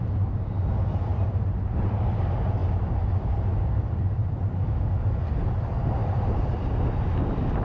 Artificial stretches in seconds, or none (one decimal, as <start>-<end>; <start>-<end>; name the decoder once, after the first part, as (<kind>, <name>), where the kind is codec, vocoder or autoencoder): 1.1-1.7 (vocoder, BigVGAN v2)